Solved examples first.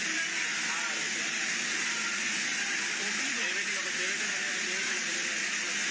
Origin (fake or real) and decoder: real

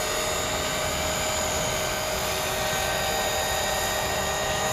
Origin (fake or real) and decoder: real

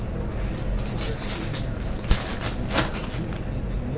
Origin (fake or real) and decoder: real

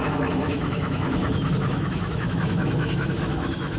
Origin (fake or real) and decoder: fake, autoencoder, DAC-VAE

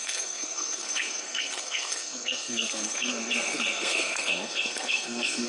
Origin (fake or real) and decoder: fake, codec, SNAC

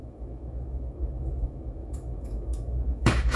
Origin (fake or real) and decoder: fake, autoencoder, DAC-VAE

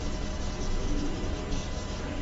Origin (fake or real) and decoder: real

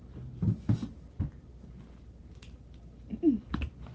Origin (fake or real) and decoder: real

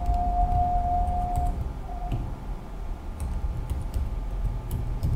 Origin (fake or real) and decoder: real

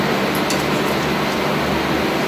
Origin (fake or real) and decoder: real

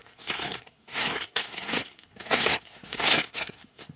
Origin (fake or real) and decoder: fake, codec, SNAC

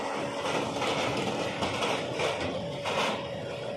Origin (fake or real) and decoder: real